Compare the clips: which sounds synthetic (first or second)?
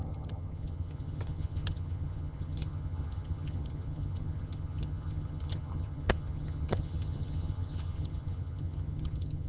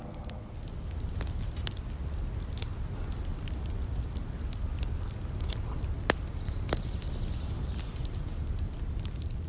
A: first